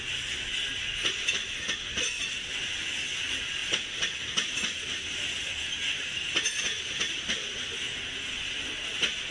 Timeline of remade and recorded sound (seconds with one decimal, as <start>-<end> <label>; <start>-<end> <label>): 0.0-9.3 recorded